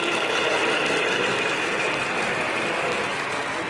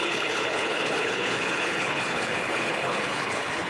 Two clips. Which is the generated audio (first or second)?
second